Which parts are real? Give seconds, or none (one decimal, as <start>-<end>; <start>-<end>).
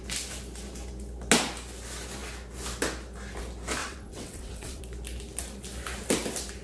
0.0-3.8; 4.8-6.6